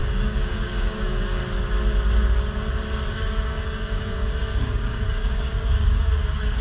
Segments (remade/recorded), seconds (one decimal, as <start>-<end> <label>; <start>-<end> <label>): 0.0-1.4 remade; 1.4-3.1 recorded; 3.1-6.6 remade